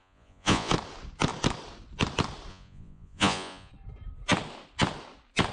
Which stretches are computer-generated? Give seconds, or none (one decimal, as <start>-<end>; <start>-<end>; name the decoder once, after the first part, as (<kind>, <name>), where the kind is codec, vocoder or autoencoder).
0.0-0.7 (vocoder, Vocos); 2.5-3.7